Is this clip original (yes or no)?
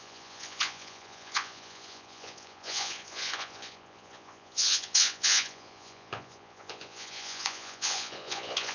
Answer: no